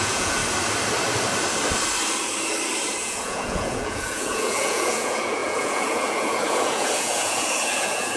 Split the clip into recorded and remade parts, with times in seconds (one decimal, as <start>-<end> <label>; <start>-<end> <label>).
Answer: 0.0-0.4 remade; 0.4-3.0 recorded; 3.0-8.2 remade